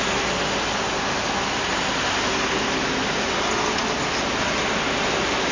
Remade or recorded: recorded